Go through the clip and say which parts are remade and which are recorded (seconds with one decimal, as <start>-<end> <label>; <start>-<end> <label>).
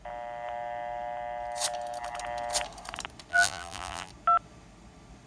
0.0-3.3 recorded; 3.3-4.1 remade; 4.1-5.3 recorded